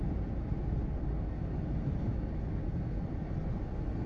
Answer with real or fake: real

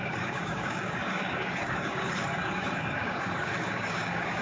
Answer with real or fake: fake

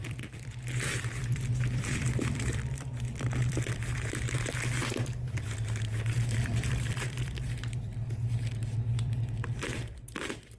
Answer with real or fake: fake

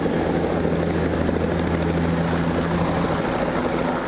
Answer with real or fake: real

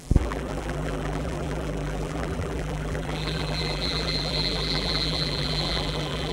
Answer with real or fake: fake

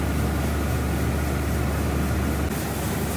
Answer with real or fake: real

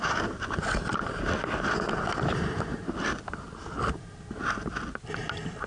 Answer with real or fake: real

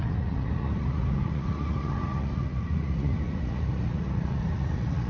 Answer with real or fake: fake